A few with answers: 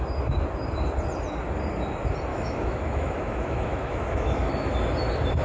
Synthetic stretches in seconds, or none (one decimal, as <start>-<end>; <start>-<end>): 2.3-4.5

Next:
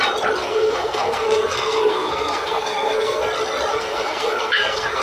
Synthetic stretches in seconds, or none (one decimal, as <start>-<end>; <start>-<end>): 0.4-3.2; 3.7-5.0

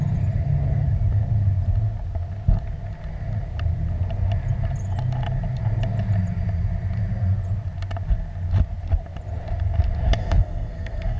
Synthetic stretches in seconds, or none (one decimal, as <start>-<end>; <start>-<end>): 10.2-11.2